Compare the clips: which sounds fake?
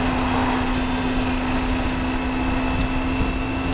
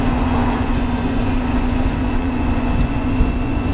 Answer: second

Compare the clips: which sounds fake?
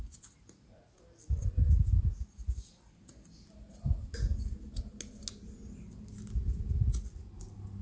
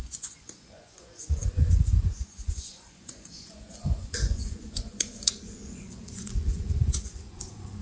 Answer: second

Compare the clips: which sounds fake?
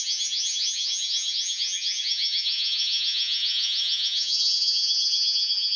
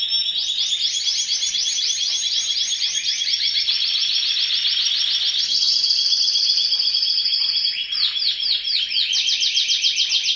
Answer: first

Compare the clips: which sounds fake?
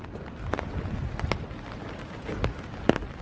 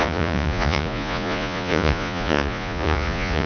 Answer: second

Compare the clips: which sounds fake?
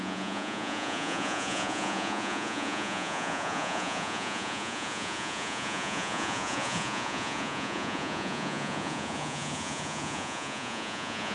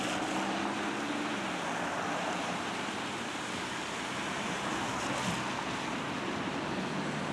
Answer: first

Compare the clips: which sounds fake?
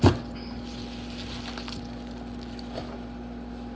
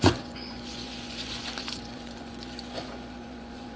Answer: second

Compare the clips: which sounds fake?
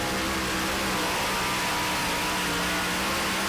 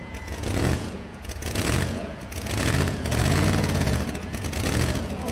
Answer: second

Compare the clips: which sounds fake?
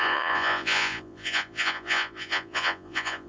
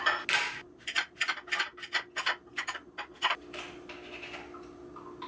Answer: first